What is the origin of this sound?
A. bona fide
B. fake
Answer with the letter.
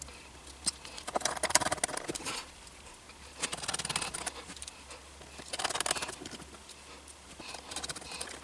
A